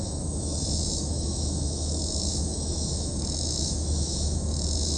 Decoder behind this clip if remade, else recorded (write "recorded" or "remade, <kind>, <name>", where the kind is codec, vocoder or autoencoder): remade, autoencoder, DAC-VAE